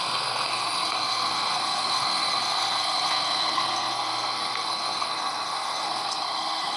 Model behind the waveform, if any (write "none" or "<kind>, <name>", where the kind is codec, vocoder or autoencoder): codec, SNAC